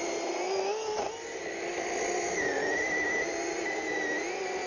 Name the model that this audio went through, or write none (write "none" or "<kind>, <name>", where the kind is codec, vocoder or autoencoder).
none